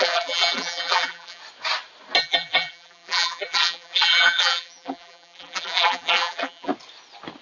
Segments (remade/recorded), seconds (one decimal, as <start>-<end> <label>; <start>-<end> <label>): 0.0-1.4 remade; 1.4-2.2 recorded; 2.2-6.7 remade; 6.7-7.4 recorded